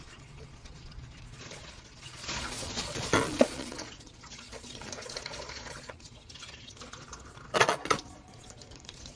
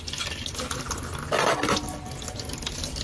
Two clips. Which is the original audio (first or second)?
second